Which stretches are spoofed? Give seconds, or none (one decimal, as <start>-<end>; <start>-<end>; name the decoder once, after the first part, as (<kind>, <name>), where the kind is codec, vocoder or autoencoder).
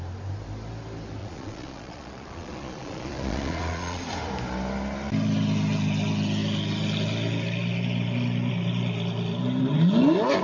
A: 1.2-4.0 (vocoder, Vocos)